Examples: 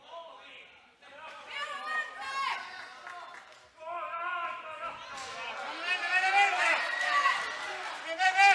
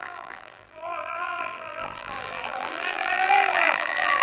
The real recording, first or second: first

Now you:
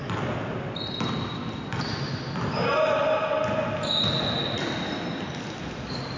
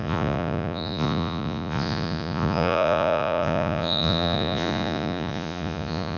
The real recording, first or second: first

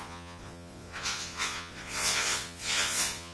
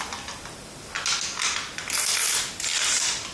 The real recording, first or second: second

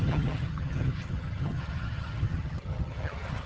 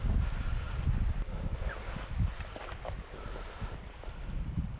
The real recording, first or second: second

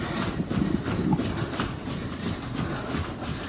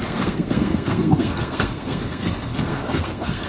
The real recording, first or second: first